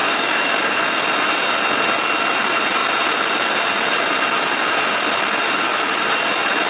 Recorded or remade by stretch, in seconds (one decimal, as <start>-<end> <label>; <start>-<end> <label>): 0.0-0.8 remade; 0.8-6.7 recorded